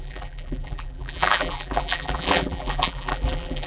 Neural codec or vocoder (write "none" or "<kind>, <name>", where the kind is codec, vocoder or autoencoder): vocoder, BigVGAN v2